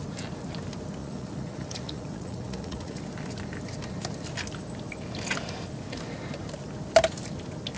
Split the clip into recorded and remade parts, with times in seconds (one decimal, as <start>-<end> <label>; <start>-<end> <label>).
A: 0.0-1.0 recorded; 1.0-3.0 remade; 3.0-7.8 recorded